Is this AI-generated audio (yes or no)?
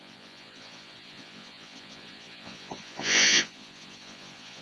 yes